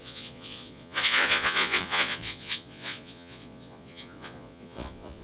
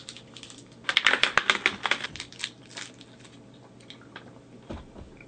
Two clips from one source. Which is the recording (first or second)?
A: second